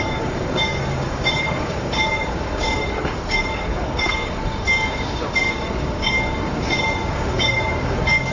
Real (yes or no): no